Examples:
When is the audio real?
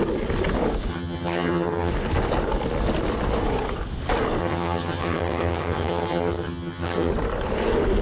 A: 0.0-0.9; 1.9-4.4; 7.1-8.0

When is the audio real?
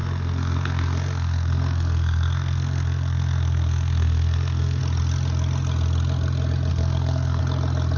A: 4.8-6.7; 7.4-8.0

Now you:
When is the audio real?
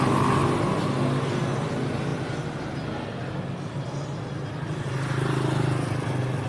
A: 0.0-6.5